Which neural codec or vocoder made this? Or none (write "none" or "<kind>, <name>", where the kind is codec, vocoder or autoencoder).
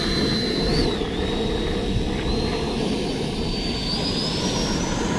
none